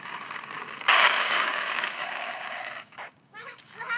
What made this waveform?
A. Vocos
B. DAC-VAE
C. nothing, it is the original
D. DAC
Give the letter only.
D